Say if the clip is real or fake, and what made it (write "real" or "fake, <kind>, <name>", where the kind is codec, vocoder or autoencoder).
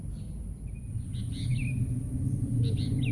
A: real